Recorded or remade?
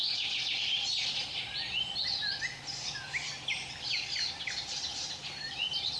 recorded